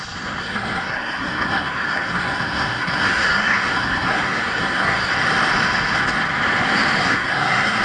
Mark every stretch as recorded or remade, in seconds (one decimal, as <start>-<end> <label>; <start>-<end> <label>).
0.0-0.4 recorded; 0.4-5.1 remade; 5.1-7.0 recorded; 7.0-7.8 remade